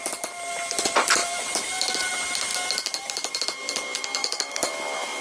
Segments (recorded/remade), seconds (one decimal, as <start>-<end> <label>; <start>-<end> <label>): 0.0-4.2 recorded; 4.2-5.2 remade